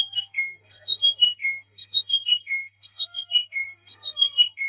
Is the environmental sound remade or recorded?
remade